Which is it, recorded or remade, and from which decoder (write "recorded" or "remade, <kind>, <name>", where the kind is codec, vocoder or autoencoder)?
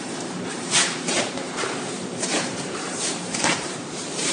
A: remade, vocoder, BigVGAN v2